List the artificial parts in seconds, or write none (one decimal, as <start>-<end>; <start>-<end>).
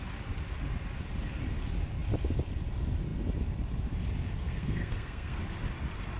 4.4-5.4